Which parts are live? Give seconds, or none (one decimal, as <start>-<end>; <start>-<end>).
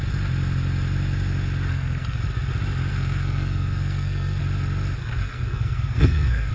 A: 0.0-1.7; 2.2-2.9; 4.4-5.0